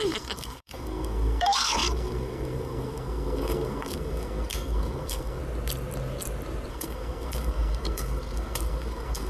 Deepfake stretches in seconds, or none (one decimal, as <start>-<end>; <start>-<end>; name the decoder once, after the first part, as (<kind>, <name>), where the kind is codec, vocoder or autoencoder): 0.0-5.4 (codec, SNAC); 6.7-9.3